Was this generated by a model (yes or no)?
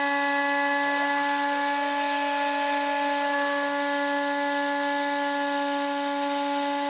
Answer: no